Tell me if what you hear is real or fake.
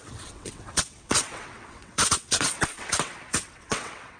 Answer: fake